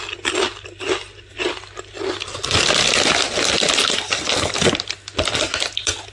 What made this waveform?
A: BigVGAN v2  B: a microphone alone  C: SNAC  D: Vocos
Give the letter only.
B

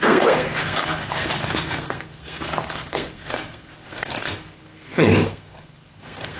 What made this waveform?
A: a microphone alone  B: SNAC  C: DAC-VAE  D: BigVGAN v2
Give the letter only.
B